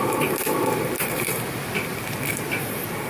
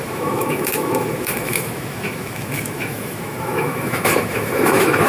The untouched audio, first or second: first